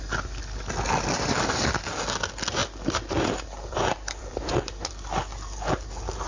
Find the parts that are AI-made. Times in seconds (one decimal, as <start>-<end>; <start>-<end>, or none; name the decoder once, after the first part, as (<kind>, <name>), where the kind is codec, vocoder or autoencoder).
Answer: 2.6-4.9 (vocoder, BigVGAN v2)